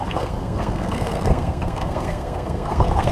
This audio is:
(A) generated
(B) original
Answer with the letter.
A